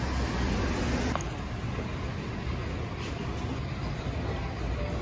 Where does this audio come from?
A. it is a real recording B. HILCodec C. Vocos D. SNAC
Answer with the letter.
A